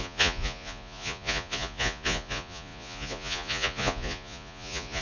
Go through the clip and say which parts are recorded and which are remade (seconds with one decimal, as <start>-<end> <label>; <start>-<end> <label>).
0.0-5.0 remade